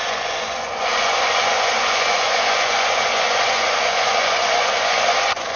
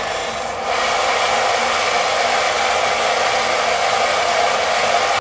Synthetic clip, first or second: first